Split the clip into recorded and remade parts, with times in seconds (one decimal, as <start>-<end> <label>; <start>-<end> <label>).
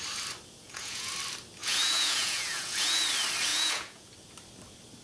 0.0-0.6 recorded; 0.6-1.1 remade; 1.1-1.6 recorded; 1.6-3.0 remade; 3.0-3.5 recorded; 3.5-4.1 remade; 4.1-5.0 recorded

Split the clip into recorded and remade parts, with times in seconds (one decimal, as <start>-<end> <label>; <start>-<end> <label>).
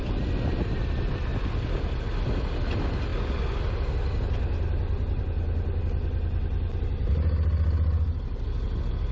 0.0-9.1 recorded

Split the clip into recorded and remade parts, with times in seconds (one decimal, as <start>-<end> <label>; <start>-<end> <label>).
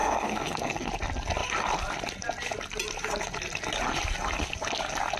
0.0-0.9 remade; 0.9-5.2 recorded